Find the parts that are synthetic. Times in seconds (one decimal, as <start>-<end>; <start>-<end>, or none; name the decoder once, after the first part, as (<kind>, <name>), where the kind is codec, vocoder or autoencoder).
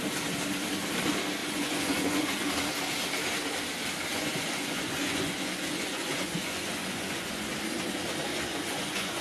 1.4-2.5 (vocoder, Vocos); 4.1-7.5; 8.3-9.2